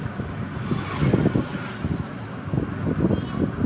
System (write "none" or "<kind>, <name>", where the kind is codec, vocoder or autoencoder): none